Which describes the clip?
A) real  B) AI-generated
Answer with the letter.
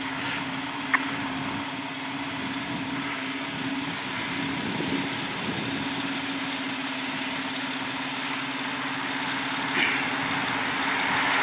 A